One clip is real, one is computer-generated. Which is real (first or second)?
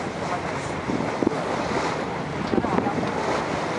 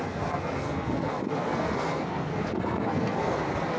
first